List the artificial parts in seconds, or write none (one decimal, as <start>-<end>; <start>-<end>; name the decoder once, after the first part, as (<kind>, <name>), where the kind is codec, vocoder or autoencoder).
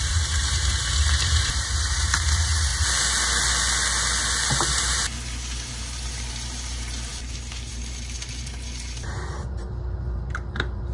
0.0-2.7 (vocoder, BigVGAN v2); 4.7-10.9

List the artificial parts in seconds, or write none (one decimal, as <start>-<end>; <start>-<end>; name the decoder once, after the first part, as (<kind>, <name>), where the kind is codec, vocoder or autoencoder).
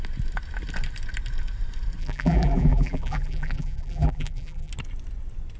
2.0-4.7 (vocoder, BigVGAN v2)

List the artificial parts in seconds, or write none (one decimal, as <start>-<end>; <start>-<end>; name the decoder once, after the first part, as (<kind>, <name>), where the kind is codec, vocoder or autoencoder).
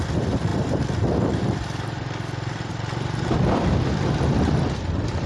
0.0-0.5 (vocoder, BigVGAN v2); 2.7-5.3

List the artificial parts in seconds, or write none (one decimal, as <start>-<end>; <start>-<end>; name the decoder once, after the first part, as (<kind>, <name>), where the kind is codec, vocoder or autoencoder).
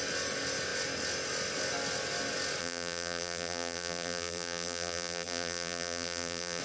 2.6-6.6 (vocoder, BigVGAN v2)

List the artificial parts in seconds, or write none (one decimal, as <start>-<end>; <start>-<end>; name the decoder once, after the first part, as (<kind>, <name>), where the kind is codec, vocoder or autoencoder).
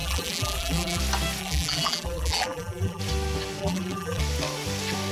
0.0-1.0 (vocoder, BigVGAN v2); 1.4-3.0; 3.6-4.2